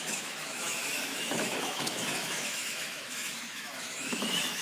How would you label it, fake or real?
fake